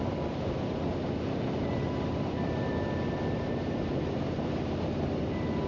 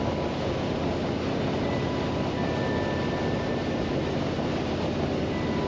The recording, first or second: second